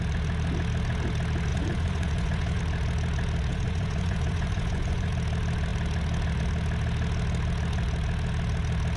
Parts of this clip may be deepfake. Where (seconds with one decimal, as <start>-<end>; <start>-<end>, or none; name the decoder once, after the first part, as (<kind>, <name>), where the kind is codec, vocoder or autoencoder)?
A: 1.5-2.6 (vocoder, Vocos); 3.5-5.1